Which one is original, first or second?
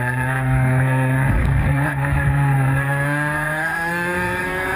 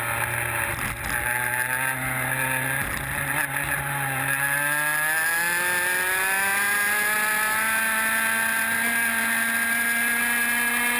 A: second